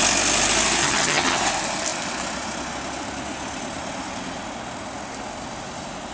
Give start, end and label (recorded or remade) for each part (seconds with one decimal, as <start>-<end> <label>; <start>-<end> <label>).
0.0-0.8 recorded; 0.8-1.4 remade; 1.4-6.1 recorded